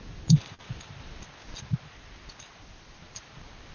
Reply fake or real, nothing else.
real